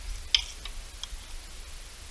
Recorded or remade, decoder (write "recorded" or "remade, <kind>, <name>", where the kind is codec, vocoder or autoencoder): recorded